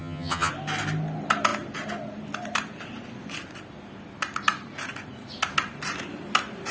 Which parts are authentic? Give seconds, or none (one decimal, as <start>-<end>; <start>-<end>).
0.5-6.7